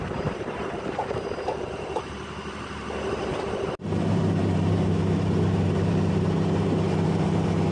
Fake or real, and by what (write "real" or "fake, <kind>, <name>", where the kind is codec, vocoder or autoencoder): fake, vocoder, BigVGAN v2